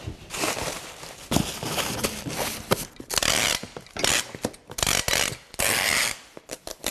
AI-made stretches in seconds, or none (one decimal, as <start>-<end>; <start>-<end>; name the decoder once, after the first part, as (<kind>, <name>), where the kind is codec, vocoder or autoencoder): 0.0-4.1 (vocoder, BigVGAN v2)